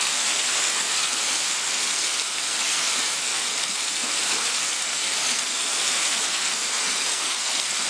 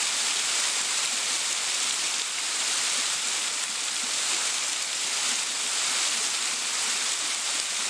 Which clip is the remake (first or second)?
first